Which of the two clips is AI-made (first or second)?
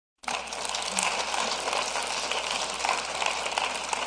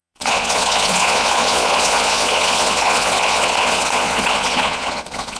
second